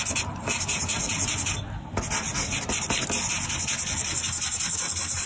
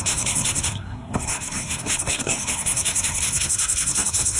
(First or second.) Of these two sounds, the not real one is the second